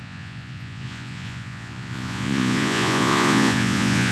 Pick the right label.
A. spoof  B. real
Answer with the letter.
A